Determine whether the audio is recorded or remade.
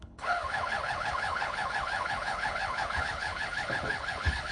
remade